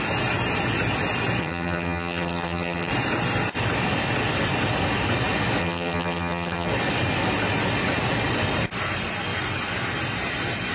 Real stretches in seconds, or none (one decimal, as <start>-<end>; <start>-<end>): 0.0-1.4; 2.9-5.6; 6.7-10.7